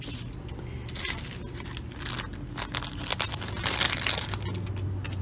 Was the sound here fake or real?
real